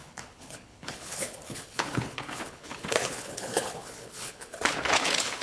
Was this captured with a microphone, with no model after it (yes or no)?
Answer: no